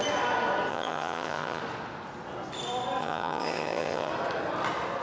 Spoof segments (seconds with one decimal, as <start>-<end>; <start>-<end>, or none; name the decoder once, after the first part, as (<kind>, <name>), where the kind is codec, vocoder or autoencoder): 0.7-1.6 (vocoder, HiFi-GAN); 3.0-4.1